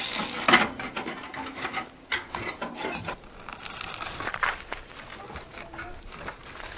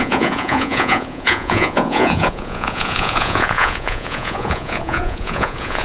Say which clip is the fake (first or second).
second